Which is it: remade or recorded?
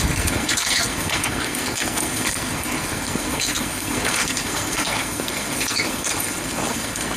remade